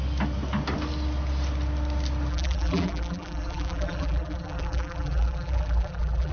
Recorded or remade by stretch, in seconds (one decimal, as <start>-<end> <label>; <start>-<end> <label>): 0.0-2.3 recorded; 2.3-6.3 remade